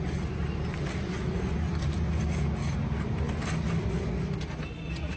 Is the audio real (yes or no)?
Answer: yes